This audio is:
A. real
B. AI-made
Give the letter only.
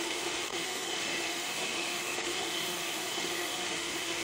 B